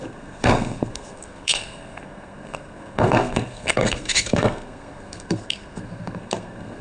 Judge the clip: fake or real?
fake